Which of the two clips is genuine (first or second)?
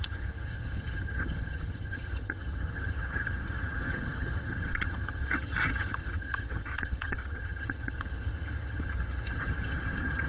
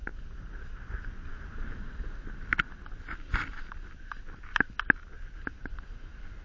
second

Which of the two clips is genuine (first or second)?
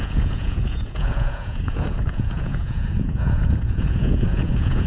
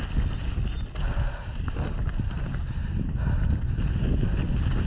second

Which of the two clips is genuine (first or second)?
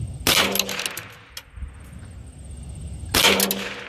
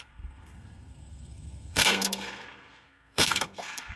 first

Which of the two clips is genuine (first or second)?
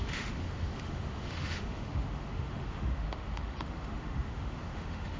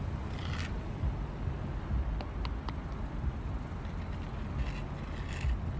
second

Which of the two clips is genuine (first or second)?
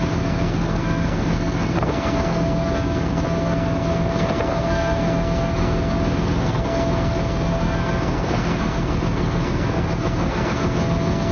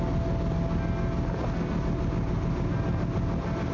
second